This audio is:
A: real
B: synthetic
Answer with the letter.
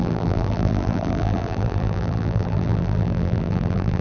B